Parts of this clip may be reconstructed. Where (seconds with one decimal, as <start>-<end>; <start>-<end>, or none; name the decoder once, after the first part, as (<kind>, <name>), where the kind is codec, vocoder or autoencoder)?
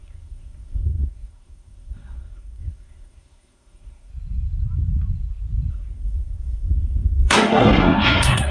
0.0-4.1 (codec, SNAC); 5.7-8.5